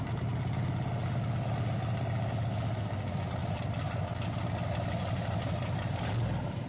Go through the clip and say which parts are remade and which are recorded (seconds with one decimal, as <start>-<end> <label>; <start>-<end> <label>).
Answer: 0.0-6.7 recorded